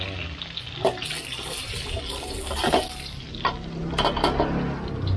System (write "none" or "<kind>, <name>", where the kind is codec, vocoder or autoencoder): none